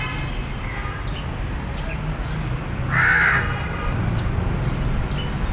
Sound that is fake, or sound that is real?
real